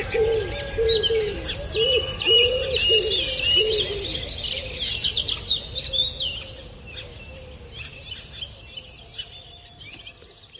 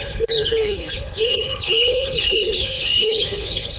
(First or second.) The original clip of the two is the first